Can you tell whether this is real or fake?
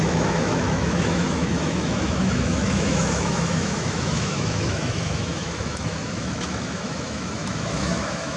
fake